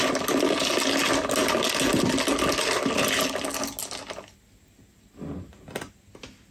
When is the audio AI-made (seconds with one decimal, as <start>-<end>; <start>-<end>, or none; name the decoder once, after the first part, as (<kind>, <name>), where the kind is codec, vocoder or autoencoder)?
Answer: none

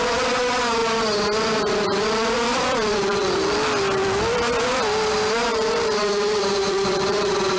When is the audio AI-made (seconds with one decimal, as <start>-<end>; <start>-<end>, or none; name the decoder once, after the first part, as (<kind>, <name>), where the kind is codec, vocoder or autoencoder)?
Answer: 2.5-3.2 (vocoder, BigVGAN v2); 5.5-7.6

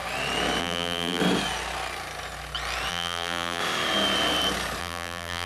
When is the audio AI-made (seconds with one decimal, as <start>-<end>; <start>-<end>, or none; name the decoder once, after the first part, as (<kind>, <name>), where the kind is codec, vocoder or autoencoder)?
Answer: 0.6-1.2 (vocoder, BigVGAN v2); 2.9-3.6; 4.8-5.5

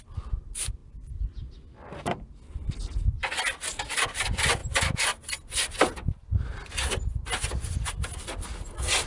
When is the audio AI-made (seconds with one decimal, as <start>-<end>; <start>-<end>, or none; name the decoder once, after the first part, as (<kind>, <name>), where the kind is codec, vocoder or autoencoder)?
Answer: none

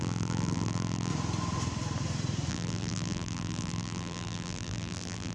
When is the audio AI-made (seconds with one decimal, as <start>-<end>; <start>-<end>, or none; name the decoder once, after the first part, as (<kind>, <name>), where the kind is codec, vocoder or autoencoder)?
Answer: 0.0-1.1 (vocoder, BigVGAN v2); 2.5-5.3

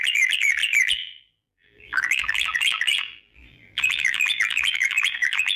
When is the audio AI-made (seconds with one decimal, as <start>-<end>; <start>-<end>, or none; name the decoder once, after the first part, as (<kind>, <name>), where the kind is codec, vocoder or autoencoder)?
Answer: 0.0-5.6 (vocoder, BigVGAN v2)